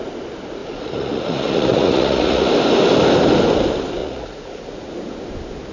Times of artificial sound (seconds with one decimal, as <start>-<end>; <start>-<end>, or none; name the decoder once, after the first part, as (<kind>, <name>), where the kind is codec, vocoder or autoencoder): 0.6-2.5 (vocoder, Vocos); 4.0-4.9